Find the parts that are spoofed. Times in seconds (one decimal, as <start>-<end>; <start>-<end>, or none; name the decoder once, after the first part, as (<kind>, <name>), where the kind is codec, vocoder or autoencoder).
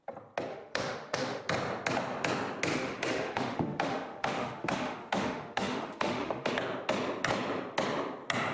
0.5-1.4 (autoencoder, DAC-VAE); 2.7-6.5